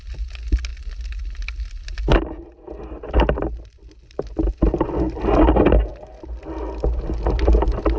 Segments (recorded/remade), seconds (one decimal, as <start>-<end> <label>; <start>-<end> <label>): 0.0-8.0 recorded